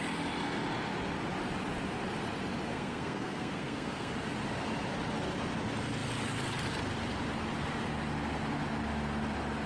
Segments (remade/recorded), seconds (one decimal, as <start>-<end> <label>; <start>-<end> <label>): 0.0-2.7 recorded; 2.7-4.1 remade; 4.1-9.7 recorded